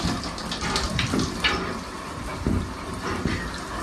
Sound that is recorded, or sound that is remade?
recorded